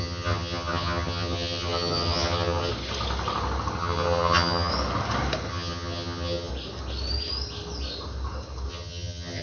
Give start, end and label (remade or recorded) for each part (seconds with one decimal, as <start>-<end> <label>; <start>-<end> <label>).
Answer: 0.0-2.7 remade; 2.7-3.8 recorded; 3.8-4.7 remade; 4.7-5.5 recorded; 5.5-6.5 remade; 6.5-8.7 recorded; 8.7-9.4 remade